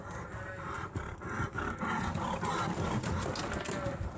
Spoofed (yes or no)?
no